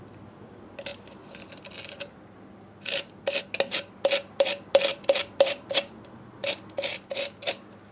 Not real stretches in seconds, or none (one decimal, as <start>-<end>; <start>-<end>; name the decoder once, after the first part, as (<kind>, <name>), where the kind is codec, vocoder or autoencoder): none